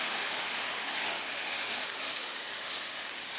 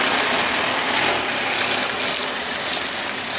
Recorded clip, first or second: second